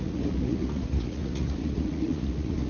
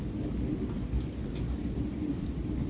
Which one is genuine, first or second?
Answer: second